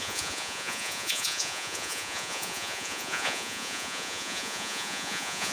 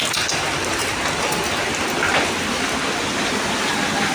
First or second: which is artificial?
first